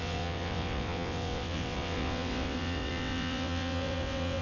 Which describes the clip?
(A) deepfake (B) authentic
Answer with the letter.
A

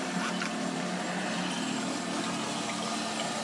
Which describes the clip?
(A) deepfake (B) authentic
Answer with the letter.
B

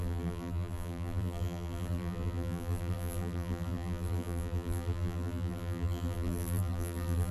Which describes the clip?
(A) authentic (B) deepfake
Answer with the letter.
B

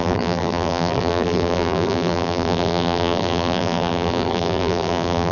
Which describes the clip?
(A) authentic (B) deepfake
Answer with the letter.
B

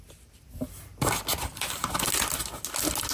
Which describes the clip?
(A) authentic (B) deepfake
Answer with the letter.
A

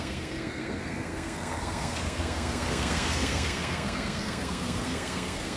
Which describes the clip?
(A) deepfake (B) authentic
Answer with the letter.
A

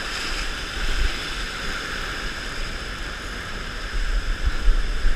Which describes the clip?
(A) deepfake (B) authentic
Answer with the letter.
A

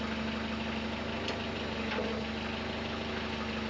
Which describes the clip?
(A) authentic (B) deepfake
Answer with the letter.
A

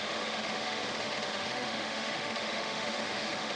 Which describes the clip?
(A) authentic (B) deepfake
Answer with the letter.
B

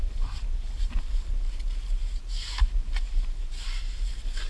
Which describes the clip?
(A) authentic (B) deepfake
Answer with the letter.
A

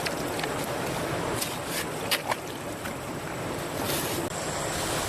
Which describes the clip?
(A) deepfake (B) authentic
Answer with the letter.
B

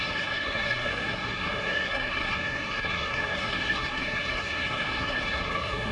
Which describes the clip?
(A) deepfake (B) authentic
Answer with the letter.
A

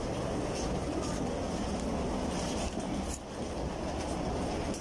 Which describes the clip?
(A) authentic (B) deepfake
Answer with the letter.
A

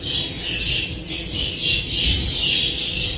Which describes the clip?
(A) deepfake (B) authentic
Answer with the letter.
B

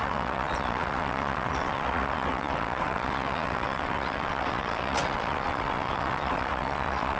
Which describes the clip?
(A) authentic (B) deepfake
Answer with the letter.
B